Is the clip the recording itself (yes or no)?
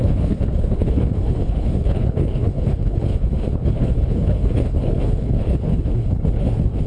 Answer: no